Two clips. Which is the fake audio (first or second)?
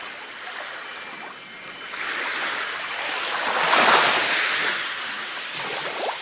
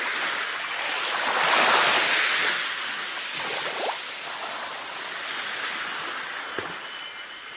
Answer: first